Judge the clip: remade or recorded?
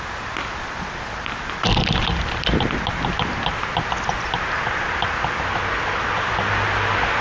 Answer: recorded